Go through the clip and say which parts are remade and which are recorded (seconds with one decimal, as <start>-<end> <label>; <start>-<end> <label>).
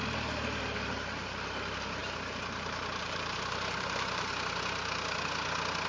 0.0-2.0 recorded; 2.0-4.3 remade; 4.3-5.9 recorded